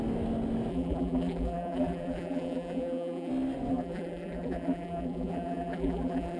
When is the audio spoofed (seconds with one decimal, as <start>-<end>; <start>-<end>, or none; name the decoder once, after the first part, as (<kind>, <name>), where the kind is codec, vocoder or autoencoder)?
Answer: 0.7-3.3 (vocoder, BigVGAN v2); 3.7-6.4

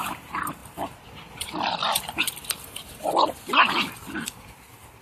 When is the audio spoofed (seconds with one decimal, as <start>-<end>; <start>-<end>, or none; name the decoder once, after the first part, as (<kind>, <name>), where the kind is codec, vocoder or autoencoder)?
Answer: 0.6-3.1 (vocoder, BigVGAN v2)

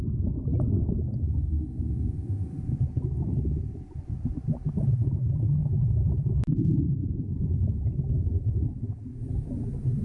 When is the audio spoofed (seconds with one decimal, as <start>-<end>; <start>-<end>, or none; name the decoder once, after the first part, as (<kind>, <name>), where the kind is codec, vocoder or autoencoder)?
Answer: 5.6-6.5 (vocoder, BigVGAN v2)

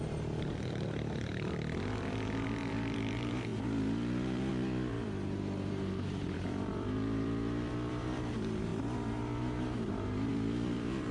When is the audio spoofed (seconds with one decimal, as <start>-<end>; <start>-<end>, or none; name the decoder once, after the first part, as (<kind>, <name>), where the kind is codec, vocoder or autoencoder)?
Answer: 0.0-11.1 (vocoder, BigVGAN v2)

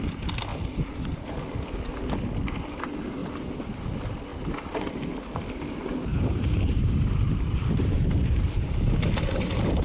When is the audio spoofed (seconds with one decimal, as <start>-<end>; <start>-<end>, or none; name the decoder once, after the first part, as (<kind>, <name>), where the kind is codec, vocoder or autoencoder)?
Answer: 3.2-3.8 (vocoder, BigVGAN v2); 6.1-8.9